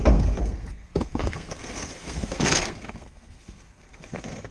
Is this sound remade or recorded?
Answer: remade